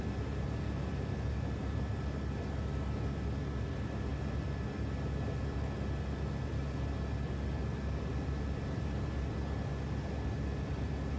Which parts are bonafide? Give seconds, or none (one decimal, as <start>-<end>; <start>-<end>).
0.0-11.2